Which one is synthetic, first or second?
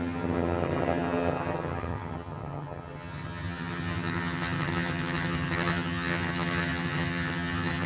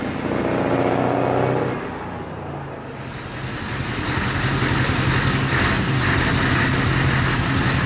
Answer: first